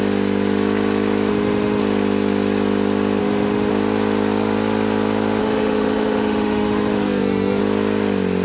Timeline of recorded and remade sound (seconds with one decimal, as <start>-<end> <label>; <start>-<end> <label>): 0.0-1.3 recorded; 1.3-1.8 remade; 1.8-3.2 recorded; 3.2-3.7 remade; 3.7-5.4 recorded; 5.4-7.6 remade; 7.6-8.4 recorded